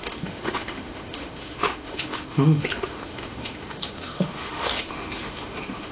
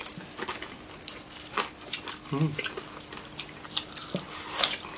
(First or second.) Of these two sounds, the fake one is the first